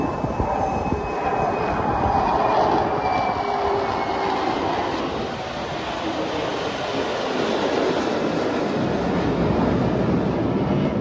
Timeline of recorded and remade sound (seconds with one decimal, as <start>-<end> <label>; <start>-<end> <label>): 0.0-11.0 recorded